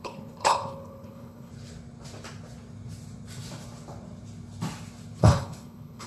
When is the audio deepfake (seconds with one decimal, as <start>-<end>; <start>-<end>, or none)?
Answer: 0.0-1.5; 5.2-6.1